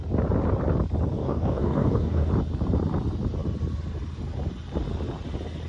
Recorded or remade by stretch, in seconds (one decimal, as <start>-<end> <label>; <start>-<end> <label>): 0.0-1.2 recorded; 1.2-2.3 remade; 2.3-5.7 recorded